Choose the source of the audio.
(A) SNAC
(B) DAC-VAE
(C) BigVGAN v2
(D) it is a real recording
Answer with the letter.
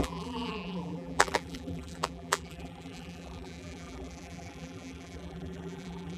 C